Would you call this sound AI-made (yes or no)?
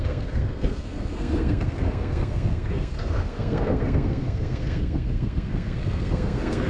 yes